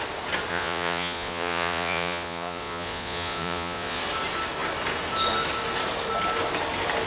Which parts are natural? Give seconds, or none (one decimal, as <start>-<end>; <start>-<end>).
0.0-0.5; 4.0-7.1